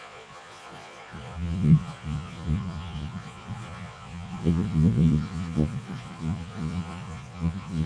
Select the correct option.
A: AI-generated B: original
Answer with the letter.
A